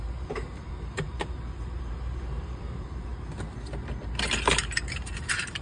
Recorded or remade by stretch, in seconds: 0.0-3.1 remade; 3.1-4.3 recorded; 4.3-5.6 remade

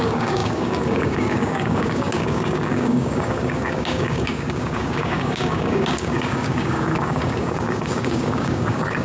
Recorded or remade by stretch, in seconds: 0.0-9.0 remade